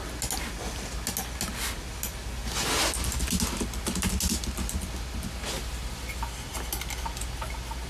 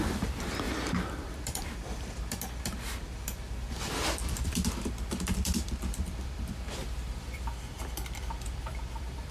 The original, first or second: first